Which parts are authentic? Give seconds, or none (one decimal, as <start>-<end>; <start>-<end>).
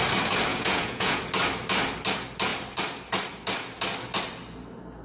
0.0-0.5; 1.2-5.0